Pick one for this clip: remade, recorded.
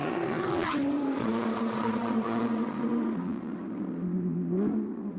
remade